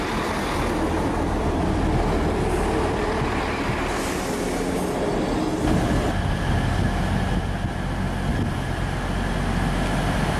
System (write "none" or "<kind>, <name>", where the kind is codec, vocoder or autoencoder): none